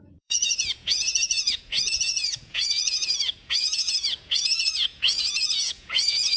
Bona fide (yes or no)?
no